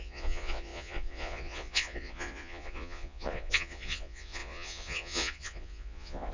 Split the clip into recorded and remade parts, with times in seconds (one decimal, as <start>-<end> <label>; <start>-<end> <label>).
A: 0.0-6.3 remade